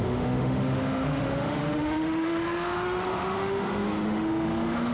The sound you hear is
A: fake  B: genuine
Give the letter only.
A